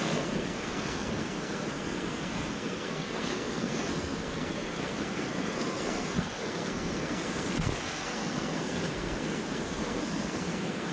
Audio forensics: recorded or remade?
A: remade